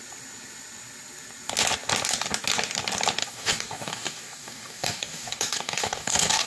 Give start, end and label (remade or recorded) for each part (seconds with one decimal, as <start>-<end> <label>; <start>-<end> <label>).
0.0-3.2 recorded; 3.2-6.5 remade